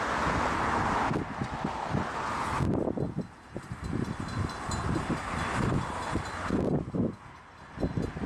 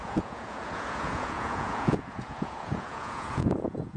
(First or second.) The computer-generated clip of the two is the second